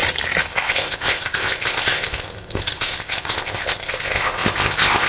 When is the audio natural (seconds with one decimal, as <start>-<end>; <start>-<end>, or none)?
0.0-0.5